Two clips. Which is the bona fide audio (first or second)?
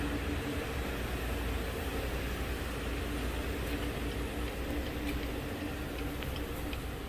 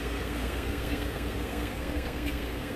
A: first